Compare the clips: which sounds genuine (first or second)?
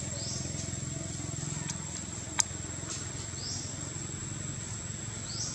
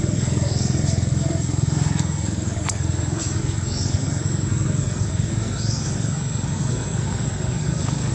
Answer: first